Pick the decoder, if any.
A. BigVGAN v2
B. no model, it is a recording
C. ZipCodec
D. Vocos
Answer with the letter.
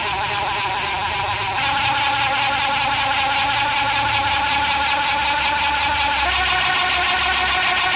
B